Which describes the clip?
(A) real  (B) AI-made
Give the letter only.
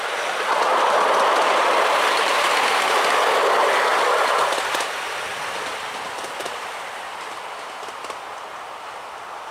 A